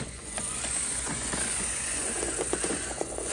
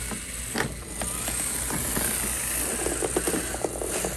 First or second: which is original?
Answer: second